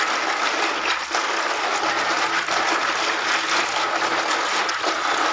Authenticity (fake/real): real